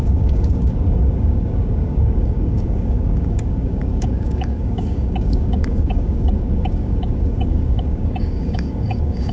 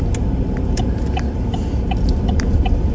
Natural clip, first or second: second